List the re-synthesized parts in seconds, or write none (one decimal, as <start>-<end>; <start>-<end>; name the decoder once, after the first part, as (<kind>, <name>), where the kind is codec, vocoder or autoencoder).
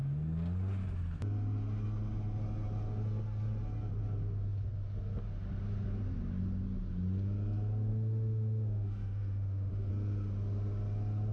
7.9-9.9 (autoencoder, DAC-VAE)